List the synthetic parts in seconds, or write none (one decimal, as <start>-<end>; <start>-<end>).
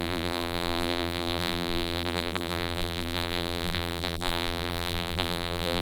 0.0-5.8